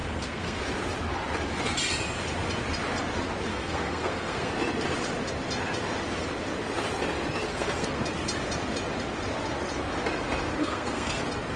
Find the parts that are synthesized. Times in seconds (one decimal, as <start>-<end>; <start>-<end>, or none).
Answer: 0.0-0.6; 3.5-4.5; 7.5-8.0; 10.6-11.2